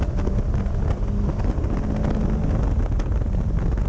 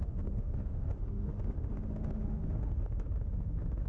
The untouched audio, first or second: first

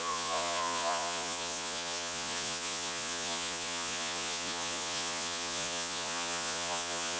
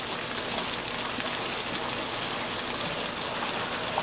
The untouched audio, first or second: second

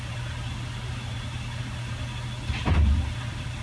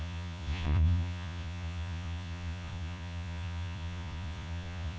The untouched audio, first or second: first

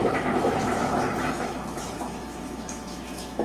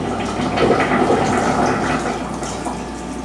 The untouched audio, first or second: second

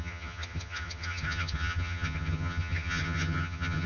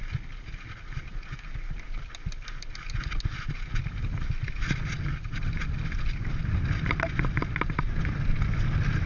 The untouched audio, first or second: second